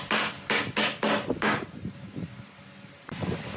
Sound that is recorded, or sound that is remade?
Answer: recorded